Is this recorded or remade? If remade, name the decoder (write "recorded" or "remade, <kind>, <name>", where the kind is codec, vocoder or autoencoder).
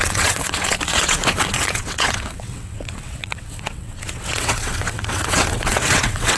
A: remade, vocoder, WaveNeXt